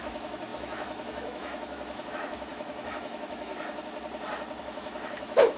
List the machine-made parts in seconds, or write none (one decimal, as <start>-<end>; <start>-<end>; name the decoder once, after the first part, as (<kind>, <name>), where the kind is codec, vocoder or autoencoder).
0.0-3.5 (autoencoder, DAC-VAE); 4.6-5.6